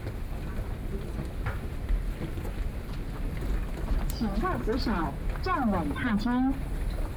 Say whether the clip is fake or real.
real